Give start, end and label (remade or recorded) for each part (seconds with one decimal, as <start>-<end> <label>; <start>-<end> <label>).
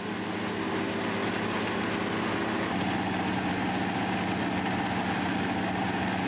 0.0-6.3 recorded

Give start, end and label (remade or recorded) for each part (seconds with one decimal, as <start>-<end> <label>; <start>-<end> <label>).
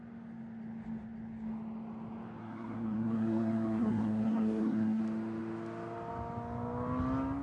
0.0-2.4 recorded; 2.4-5.0 remade; 5.0-7.4 recorded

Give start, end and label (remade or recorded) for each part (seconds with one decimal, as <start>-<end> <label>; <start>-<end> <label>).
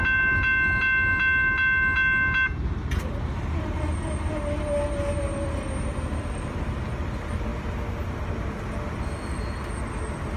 0.0-10.4 recorded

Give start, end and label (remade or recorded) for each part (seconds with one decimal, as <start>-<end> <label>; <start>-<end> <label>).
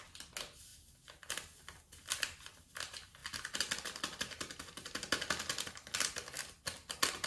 0.0-7.3 recorded